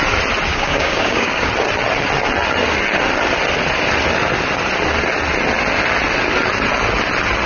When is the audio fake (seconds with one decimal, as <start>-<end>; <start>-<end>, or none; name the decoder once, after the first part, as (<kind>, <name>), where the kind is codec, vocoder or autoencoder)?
0.5-1.5 (codec, DAC)